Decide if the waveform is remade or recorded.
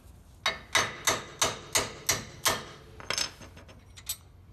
recorded